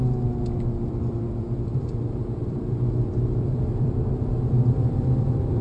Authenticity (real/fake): fake